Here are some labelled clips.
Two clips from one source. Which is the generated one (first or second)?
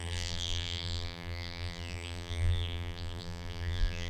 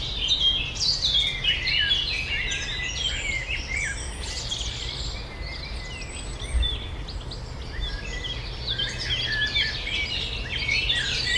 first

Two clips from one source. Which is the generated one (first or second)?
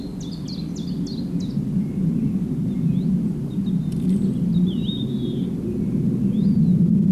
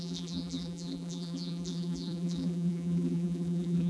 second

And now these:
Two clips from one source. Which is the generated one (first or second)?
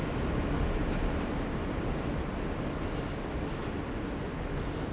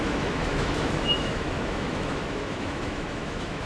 second